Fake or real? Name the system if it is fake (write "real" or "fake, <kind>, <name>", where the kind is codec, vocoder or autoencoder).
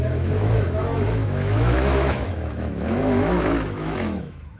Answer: fake, autoencoder, DAC-VAE